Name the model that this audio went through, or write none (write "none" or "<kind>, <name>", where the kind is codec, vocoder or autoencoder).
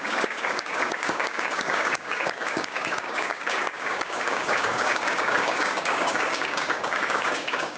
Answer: codec, DAC